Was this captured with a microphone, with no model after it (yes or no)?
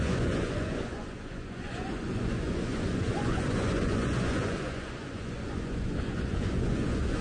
no